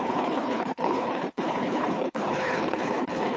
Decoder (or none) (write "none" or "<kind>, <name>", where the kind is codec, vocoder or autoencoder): codec, HILCodec